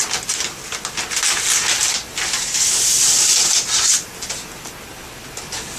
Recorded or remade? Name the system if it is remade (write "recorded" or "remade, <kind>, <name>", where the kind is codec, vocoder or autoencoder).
recorded